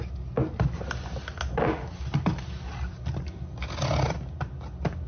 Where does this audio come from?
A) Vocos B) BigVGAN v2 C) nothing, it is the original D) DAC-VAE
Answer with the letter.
C